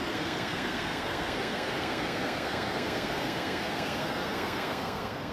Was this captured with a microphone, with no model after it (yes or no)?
no